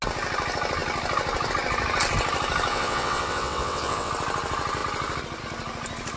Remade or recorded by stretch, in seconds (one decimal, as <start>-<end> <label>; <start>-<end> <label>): 0.0-2.7 recorded; 2.7-4.1 remade; 4.1-6.2 recorded